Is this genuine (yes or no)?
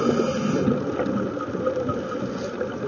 yes